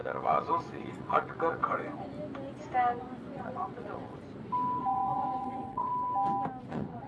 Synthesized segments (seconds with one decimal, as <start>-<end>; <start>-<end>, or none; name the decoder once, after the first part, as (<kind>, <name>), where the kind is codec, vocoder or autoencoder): 0.0-1.6 (vocoder, WaveNeXt); 3.3-4.2; 4.8-5.9; 6.6-7.1